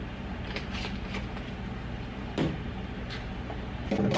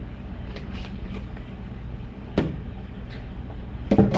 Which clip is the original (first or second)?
first